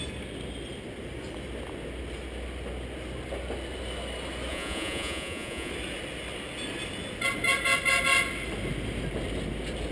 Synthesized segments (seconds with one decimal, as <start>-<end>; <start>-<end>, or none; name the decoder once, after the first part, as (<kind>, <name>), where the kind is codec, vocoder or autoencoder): 4.5-5.7 (vocoder, Vocos)